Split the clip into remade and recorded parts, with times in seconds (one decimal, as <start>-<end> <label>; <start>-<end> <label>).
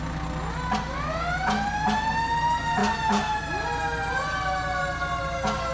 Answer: 0.0-5.7 recorded